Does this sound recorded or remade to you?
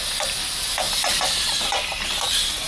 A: recorded